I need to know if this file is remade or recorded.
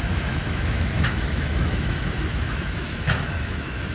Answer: remade